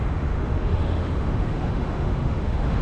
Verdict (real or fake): fake